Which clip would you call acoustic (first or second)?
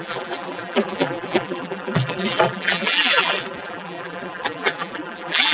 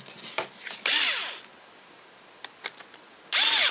second